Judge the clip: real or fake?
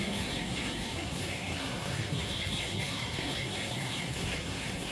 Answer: fake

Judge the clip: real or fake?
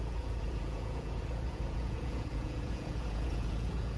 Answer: fake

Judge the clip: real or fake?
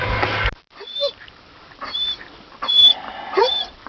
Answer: real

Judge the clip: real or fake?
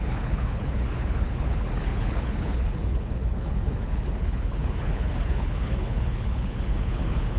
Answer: fake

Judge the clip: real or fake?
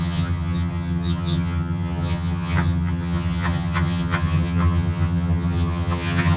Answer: fake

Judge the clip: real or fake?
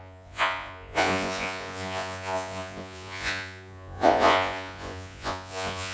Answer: fake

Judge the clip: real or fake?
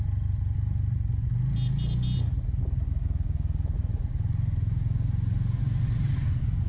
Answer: real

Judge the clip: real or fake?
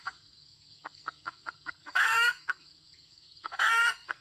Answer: fake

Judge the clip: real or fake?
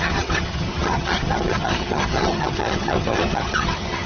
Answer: fake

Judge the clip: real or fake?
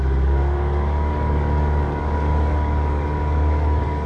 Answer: fake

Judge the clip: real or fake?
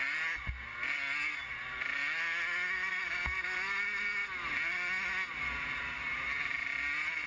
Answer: real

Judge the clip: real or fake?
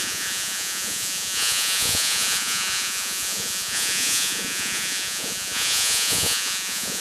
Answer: fake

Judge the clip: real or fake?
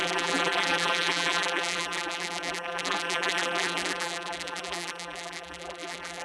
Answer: fake